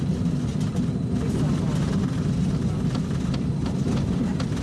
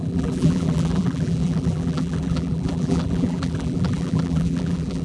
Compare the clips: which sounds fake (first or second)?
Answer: second